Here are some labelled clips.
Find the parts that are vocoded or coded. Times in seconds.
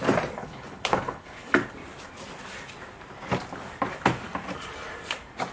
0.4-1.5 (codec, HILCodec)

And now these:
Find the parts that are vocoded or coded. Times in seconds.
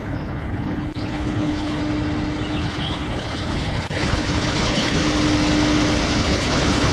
0.0-1.8 (codec, HILCodec); 2.5-5.0; 6.1-6.9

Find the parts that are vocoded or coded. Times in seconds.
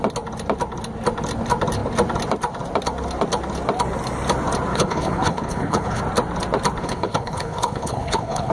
4.7-6.0 (codec, HILCodec); 6.8-8.5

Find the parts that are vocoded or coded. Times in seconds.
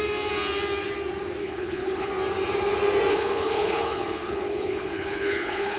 1.4-2.1 (codec, HILCodec); 3.1-5.8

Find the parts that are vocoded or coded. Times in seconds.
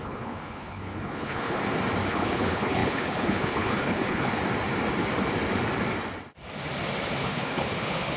0.0-1.6 (codec, HILCodec); 2.1-4.4; 7.2-8.2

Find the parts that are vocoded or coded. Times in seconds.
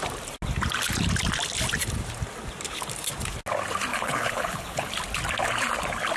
3.9-4.9 (codec, HILCodec)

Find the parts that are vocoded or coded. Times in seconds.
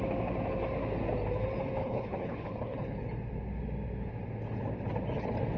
1.8-2.9 (codec, HILCodec)